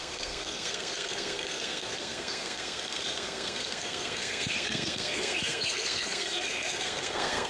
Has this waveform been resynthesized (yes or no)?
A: yes